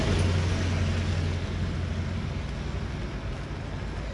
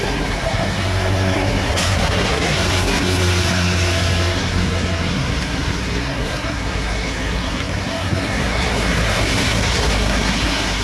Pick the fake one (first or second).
second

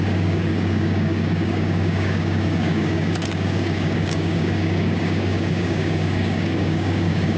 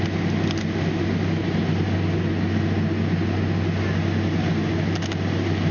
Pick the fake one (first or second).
first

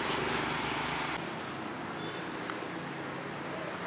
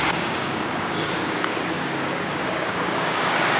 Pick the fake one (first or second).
second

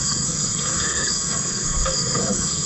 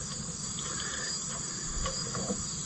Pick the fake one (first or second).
first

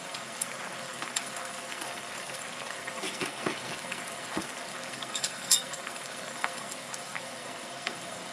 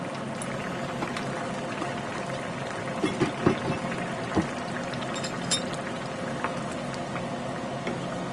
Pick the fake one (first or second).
first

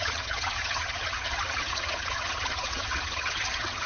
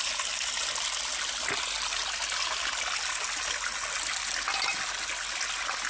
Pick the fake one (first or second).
first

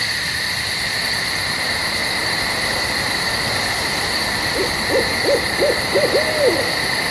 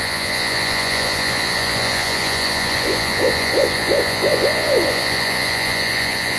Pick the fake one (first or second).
second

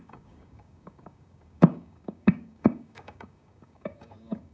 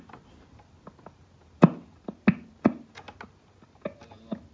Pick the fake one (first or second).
first